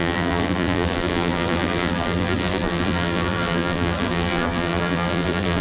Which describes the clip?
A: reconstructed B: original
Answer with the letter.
A